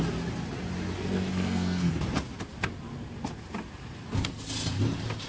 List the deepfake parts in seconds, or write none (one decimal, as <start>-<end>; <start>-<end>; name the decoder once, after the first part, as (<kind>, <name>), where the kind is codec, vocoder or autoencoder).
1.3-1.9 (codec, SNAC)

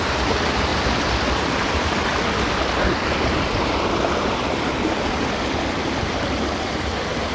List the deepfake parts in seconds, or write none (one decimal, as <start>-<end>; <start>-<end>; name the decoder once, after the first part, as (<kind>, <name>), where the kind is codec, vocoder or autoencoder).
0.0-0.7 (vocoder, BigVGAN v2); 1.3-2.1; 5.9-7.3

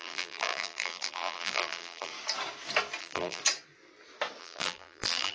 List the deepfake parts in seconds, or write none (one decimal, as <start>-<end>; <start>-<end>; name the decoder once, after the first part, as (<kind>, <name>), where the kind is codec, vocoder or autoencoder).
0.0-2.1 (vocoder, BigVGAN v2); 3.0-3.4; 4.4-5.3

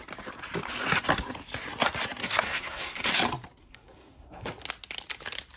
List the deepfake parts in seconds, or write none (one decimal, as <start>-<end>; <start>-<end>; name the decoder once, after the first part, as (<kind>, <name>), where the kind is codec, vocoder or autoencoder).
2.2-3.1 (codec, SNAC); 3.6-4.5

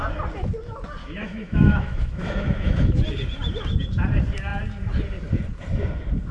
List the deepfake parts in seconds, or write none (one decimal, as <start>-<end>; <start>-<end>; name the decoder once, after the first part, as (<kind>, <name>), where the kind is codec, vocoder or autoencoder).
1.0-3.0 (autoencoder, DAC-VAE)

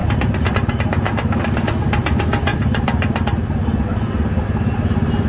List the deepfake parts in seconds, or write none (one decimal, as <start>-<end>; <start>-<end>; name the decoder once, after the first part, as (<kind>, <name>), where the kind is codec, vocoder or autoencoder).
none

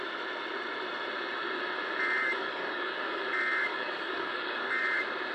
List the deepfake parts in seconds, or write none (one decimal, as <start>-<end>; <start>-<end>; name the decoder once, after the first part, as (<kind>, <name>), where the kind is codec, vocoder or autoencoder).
2.2-3.2 (codec, DAC); 3.7-4.8